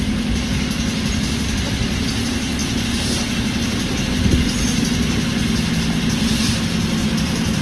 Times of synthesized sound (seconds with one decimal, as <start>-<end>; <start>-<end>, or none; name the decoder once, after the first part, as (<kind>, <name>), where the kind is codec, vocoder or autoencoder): 7.0-7.6 (vocoder, BigVGAN v2)